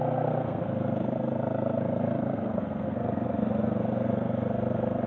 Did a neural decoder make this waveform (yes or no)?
yes